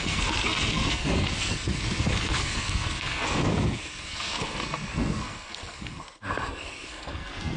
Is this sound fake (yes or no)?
yes